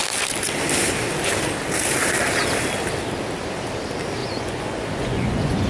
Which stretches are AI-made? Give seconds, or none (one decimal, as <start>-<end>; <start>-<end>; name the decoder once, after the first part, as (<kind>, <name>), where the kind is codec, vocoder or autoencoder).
4.2-5.7 (vocoder, Vocos)